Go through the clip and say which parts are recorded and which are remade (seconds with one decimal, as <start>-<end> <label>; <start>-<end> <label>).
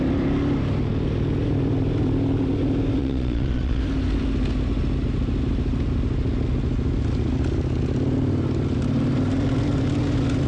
0.0-3.0 recorded; 3.0-3.8 remade; 3.8-10.5 recorded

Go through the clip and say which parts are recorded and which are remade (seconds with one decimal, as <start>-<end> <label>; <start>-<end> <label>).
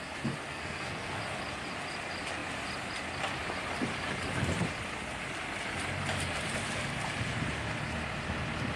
0.0-0.5 recorded; 0.5-1.2 remade; 1.2-8.8 recorded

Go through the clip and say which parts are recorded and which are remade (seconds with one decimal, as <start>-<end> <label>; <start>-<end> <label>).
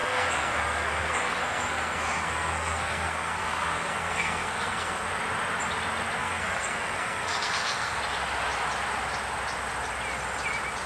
0.0-5.1 remade; 5.1-6.2 recorded; 6.2-8.0 remade; 8.0-10.9 recorded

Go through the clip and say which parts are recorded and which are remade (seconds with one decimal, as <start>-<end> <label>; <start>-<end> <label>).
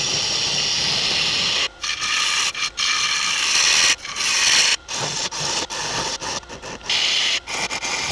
0.0-8.1 recorded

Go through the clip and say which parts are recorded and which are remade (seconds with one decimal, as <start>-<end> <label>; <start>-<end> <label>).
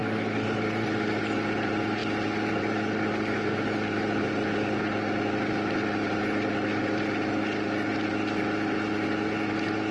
0.0-9.9 recorded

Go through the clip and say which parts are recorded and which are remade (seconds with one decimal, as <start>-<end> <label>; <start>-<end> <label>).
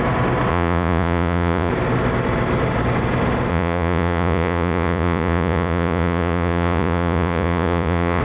0.0-0.5 recorded; 0.5-1.7 remade; 1.7-3.5 recorded; 3.5-8.2 remade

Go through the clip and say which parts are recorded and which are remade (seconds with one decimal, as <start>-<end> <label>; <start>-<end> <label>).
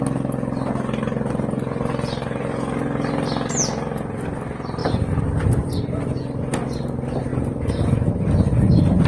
0.0-7.3 recorded; 7.3-8.7 remade; 8.7-9.1 recorded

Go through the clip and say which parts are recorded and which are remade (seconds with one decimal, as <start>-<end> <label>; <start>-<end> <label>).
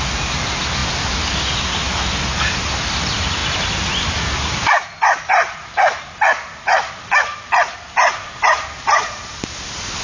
0.0-10.0 recorded